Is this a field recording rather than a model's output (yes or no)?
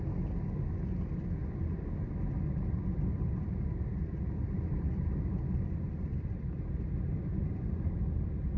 yes